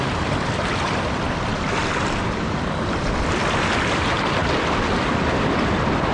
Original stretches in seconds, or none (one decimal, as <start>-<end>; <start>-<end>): 0.0-6.1